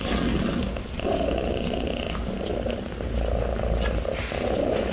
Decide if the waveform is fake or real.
real